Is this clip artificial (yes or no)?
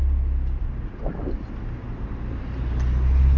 no